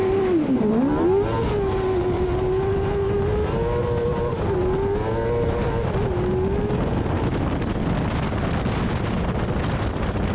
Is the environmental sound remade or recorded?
recorded